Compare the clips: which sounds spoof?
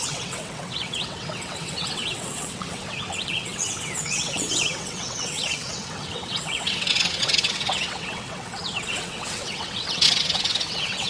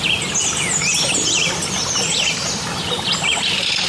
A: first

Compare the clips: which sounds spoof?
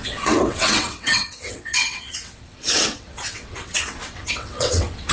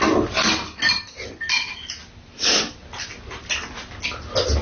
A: first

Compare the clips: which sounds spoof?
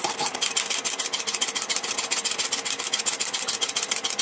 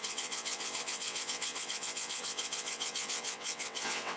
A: second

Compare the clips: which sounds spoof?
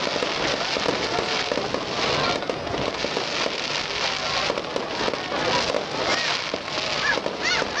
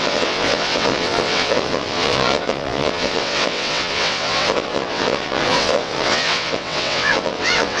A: second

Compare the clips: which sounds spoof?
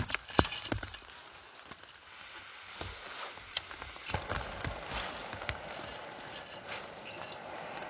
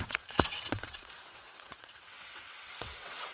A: second